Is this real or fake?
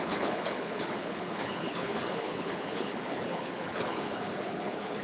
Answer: fake